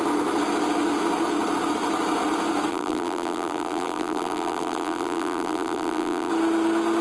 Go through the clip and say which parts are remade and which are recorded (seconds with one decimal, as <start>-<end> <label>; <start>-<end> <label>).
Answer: 0.0-2.7 recorded; 2.7-6.3 remade; 6.3-7.0 recorded